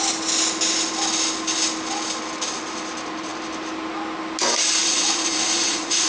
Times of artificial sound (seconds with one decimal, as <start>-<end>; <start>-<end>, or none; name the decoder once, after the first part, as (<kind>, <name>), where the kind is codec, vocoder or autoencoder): 4.8-6.1 (vocoder, Vocos)